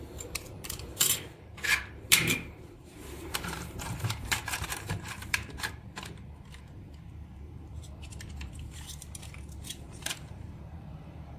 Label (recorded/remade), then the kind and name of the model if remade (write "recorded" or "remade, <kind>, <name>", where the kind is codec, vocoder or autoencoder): remade, vocoder, BigVGAN v2